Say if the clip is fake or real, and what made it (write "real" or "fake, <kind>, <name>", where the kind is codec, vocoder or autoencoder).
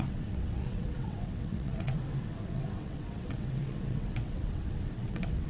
fake, vocoder, WaveNeXt